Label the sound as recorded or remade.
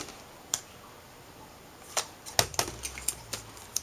recorded